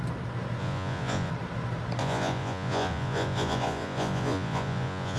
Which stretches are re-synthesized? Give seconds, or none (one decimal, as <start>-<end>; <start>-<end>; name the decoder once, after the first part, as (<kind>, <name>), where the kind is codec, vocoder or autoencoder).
0.6-1.3 (vocoder, Vocos); 2.0-5.2